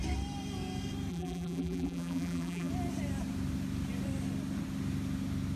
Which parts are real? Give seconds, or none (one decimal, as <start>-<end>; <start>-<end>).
0.0-1.1; 2.7-5.6